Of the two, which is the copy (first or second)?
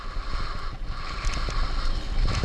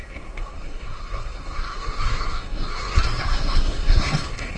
second